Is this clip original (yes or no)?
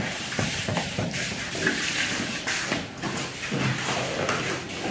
yes